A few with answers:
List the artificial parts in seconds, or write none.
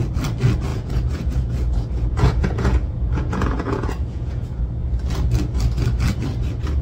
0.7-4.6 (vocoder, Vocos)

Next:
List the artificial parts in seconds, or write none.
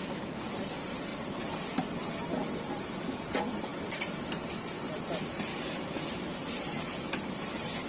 0.0-1.1 (vocoder, BigVGAN v2); 2.9-7.9